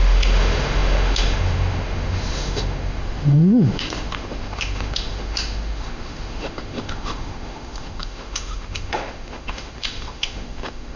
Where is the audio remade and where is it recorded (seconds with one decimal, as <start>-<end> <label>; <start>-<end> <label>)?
0.0-11.0 remade